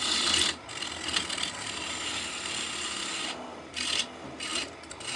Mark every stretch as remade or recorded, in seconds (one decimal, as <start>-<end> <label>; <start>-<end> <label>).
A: 0.0-5.2 recorded